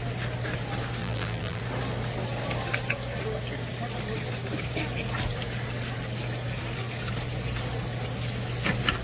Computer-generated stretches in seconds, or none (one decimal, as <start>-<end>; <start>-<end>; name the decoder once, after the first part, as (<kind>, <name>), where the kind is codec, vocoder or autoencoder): 1.0-1.6 (vocoder, BigVGAN v2)